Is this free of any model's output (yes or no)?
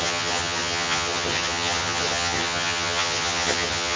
no